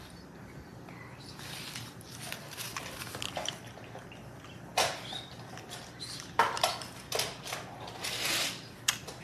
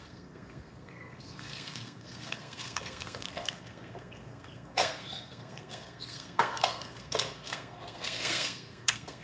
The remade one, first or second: second